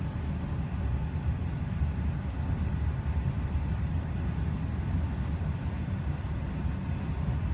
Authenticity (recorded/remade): recorded